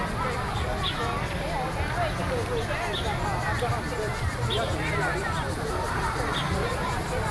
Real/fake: real